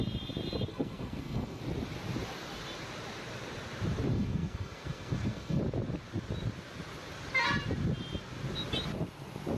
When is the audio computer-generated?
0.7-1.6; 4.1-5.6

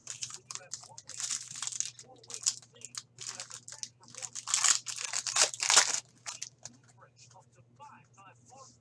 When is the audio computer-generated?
0.0-1.3

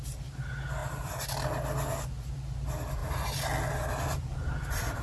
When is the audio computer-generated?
0.8-1.3; 3.0-3.7; 4.3-5.0

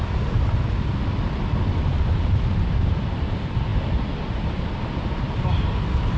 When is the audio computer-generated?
none

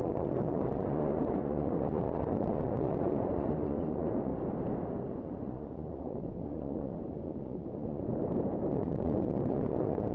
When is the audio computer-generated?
0.0-4.3; 5.0-8.1; 8.7-10.1

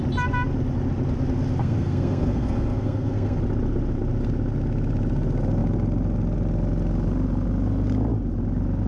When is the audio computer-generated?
1.6-3.4

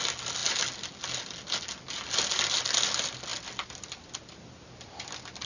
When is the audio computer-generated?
none

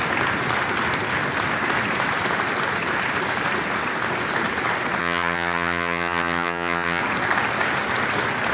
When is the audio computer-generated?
5.0-7.0